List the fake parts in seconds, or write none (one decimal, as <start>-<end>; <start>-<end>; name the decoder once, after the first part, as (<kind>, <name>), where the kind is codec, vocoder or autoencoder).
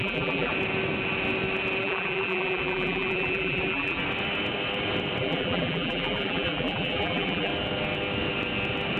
0.0-0.5 (vocoder, BigVGAN v2); 1.8-4.0; 5.2-7.5